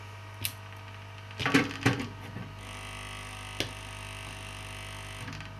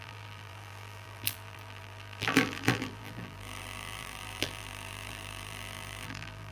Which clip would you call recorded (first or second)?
first